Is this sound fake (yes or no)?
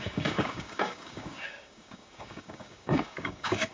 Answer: yes